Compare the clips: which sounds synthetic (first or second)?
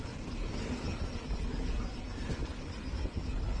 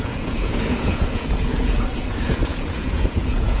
second